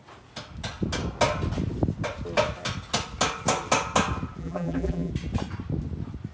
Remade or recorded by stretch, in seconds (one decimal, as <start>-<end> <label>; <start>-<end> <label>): 0.0-4.4 recorded; 4.4-5.1 remade; 5.1-6.3 recorded